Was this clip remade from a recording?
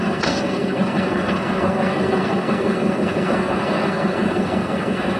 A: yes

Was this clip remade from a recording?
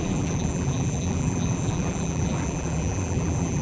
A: yes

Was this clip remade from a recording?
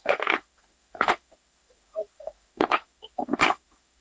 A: yes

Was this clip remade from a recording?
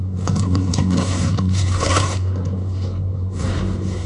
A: yes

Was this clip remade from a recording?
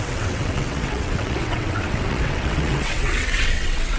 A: yes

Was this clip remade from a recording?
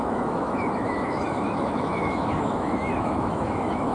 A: yes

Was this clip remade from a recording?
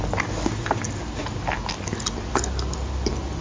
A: no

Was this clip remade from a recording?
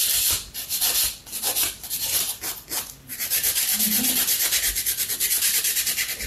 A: yes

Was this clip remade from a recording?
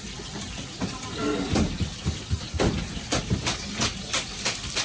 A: no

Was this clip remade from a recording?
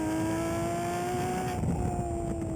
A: no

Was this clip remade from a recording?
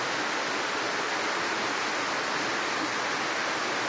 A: no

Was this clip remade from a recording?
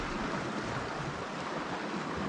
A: no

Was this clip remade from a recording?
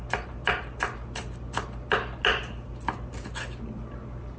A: no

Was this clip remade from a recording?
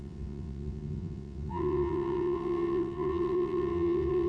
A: yes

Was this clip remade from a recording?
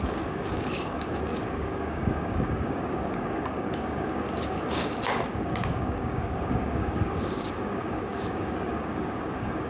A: yes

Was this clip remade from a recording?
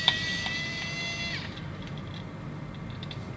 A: no